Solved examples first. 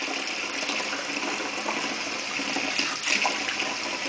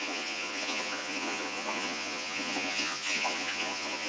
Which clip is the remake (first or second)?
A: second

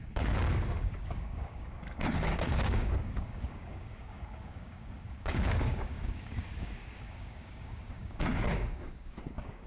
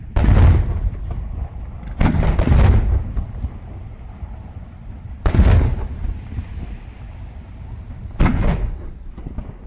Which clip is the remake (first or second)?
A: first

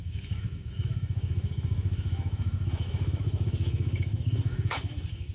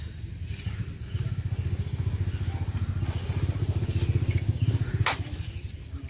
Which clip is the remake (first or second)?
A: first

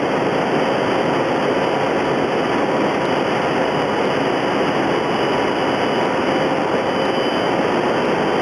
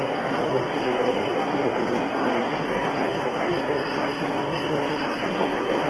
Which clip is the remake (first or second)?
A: second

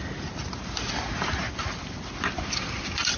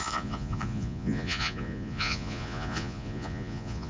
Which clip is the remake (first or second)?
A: second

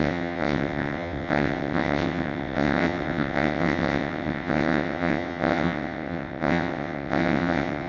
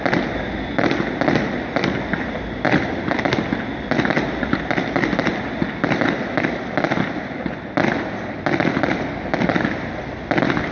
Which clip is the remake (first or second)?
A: first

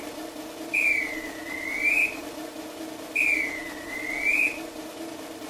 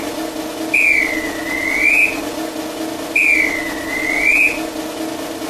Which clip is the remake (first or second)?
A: first